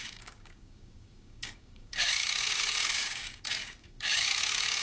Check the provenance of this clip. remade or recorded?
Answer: remade